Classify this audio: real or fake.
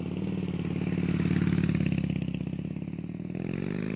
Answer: real